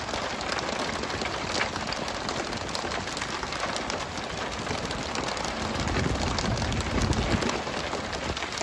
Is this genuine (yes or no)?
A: yes